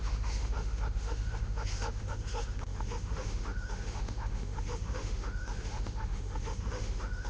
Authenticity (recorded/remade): remade